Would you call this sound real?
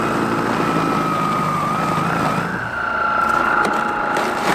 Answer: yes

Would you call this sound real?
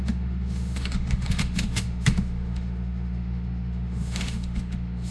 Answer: no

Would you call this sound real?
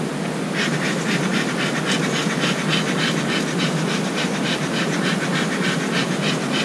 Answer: yes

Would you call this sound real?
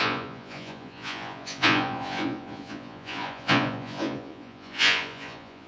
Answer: no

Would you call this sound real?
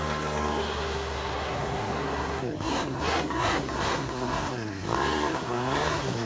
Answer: no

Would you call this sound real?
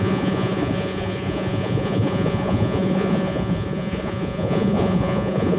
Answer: no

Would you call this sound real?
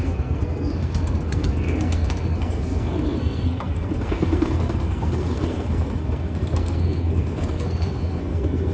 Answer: no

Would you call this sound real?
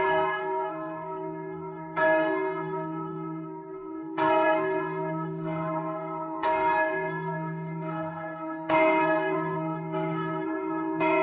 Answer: no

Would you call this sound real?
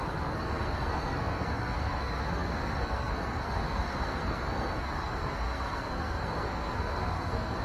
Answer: no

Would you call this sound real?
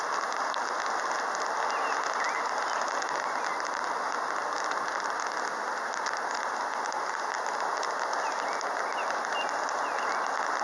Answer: yes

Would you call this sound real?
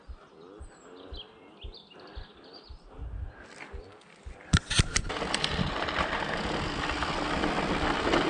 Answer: yes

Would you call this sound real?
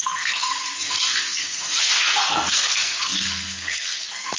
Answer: no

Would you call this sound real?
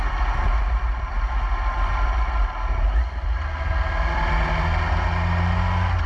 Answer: yes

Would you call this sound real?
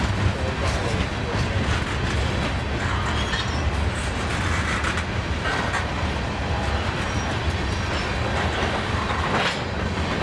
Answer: yes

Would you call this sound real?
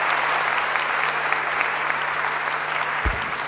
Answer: yes